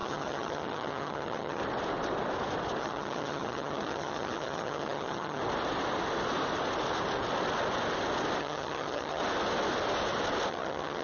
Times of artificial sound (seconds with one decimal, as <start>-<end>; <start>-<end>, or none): 0.0-1.6; 2.8-5.4; 8.4-9.2; 10.5-11.0